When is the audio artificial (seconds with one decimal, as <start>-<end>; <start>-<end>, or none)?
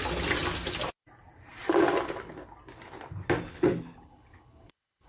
3.5-5.1